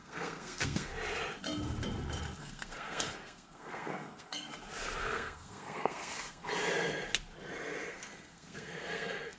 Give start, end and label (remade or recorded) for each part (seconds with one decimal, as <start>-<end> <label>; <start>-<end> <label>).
0.0-0.9 remade; 0.9-2.4 recorded; 2.4-4.5 remade; 4.5-5.0 recorded; 5.0-6.4 remade; 6.4-7.9 recorded; 7.9-9.4 remade